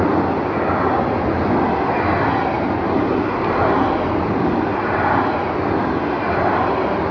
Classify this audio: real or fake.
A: real